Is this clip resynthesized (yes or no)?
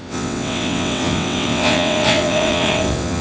yes